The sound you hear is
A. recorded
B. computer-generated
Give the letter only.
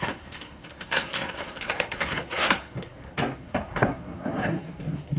B